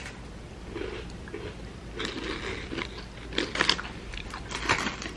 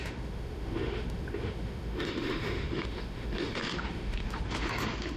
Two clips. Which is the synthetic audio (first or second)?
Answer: second